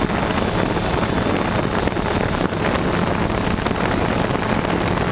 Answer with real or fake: real